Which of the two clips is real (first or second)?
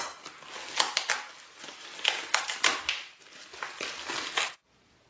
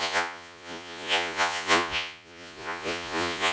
first